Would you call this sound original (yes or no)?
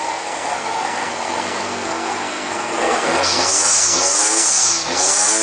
no